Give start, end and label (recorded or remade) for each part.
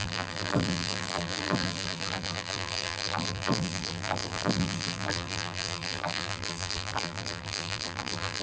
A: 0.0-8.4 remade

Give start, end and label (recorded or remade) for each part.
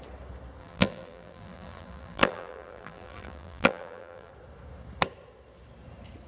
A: 0.0-0.6 recorded; 0.6-4.3 remade; 4.3-6.3 recorded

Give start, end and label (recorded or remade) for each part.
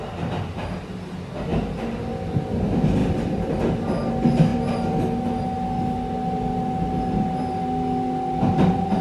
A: 0.0-3.0 recorded; 3.0-3.5 remade; 3.5-4.5 recorded; 4.5-5.2 remade; 5.2-9.0 recorded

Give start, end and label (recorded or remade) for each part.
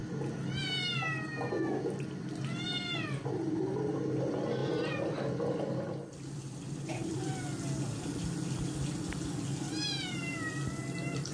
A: 0.0-4.6 recorded; 4.6-7.3 remade; 7.3-11.3 recorded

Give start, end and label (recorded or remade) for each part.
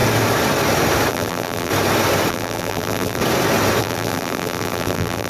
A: 0.0-1.1 recorded; 1.1-1.7 remade; 1.7-2.3 recorded; 2.3-3.2 remade; 3.2-3.8 recorded; 3.8-5.3 remade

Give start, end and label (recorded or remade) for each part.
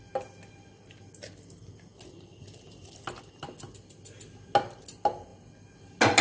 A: 0.0-6.2 recorded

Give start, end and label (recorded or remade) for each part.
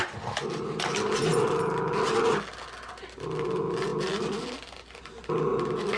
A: 0.0-0.9 remade; 0.9-6.0 recorded